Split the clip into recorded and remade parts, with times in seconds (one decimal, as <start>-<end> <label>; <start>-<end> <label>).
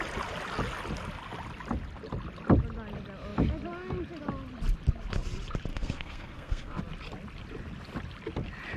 0.0-5.7 recorded; 5.7-6.8 remade; 6.8-8.8 recorded